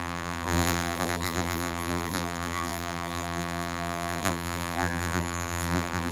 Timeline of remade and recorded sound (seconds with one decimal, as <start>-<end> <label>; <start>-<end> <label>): 0.0-6.1 remade